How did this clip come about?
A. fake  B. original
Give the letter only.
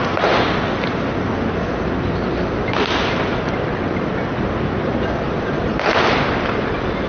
B